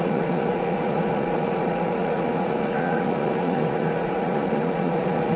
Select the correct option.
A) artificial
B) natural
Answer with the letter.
A